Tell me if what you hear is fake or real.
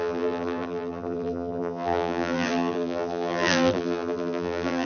fake